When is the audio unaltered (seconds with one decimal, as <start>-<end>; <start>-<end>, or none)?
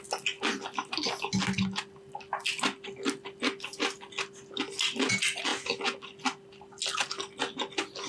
0.0-8.1